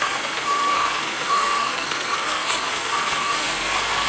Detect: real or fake fake